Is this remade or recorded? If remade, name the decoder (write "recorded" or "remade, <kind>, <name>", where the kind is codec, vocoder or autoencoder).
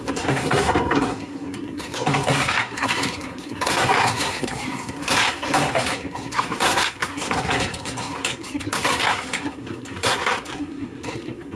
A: remade, codec, SNAC